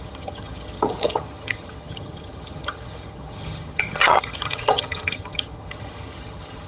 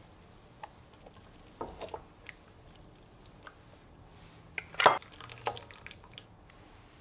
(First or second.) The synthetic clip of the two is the first